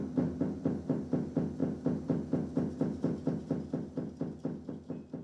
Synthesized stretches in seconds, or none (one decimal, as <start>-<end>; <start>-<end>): none